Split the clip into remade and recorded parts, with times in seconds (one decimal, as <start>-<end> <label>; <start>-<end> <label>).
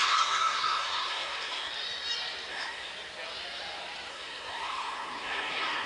0.0-1.7 remade; 1.7-2.5 recorded; 2.5-2.9 remade; 2.9-4.1 recorded; 4.1-5.9 remade